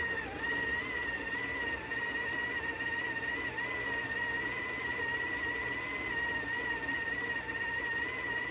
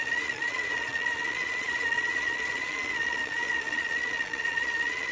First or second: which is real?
first